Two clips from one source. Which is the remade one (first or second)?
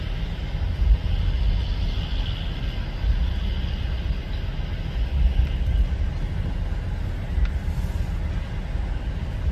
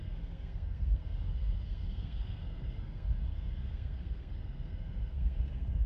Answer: second